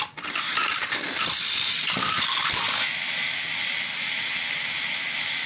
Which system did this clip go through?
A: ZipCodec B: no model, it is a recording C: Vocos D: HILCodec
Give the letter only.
B